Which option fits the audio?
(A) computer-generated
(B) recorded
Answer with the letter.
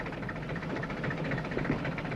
B